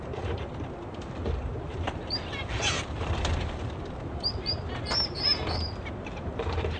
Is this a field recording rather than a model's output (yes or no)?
no